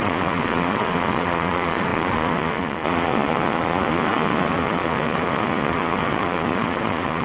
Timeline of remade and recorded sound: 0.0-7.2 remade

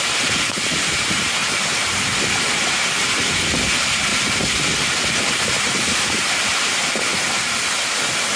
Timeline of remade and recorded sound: 0.0-7.1 recorded; 7.1-8.0 remade; 8.0-8.4 recorded

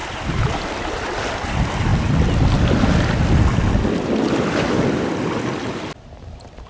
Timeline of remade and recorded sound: 0.0-6.7 recorded